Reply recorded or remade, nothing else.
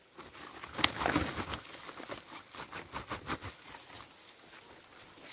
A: remade